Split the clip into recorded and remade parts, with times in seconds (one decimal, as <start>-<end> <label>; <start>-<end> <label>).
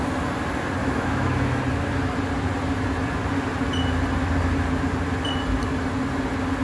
0.0-0.8 recorded; 0.8-1.6 remade; 1.6-6.6 recorded